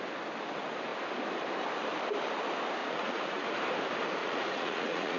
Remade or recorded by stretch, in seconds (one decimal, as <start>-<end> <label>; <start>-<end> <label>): 0.0-2.8 recorded; 2.8-3.5 remade; 3.5-4.2 recorded; 4.2-5.2 remade